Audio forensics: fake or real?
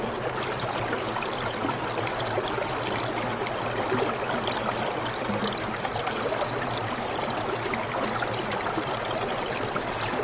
real